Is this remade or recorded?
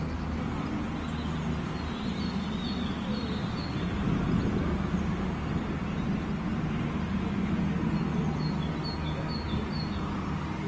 recorded